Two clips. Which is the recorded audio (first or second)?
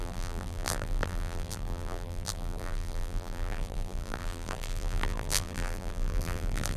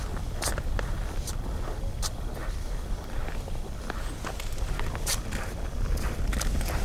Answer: second